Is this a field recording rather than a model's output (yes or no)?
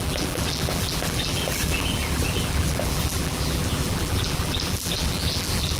no